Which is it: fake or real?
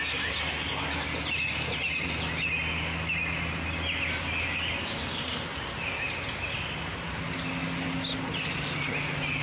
real